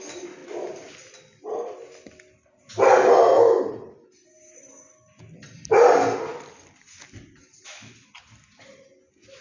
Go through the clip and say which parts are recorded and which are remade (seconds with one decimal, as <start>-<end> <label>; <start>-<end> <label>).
0.0-9.4 recorded